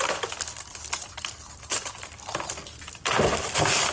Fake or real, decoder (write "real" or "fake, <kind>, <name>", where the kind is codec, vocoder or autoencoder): real